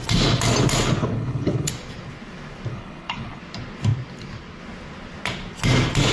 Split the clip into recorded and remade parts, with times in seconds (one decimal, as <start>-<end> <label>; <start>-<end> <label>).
0.0-1.0 recorded; 1.0-1.7 remade; 1.7-2.7 recorded; 2.7-3.4 remade; 3.4-6.1 recorded